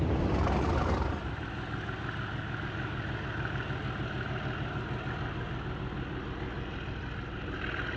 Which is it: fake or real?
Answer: real